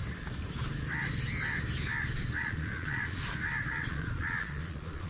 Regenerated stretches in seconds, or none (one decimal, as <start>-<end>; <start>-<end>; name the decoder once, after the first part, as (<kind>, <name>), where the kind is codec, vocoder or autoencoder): 2.4-3.2 (vocoder, Vocos); 3.7-5.1